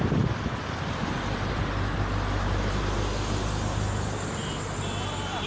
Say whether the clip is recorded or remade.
recorded